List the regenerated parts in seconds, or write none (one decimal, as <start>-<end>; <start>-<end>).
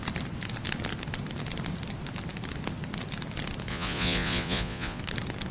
3.7-5.0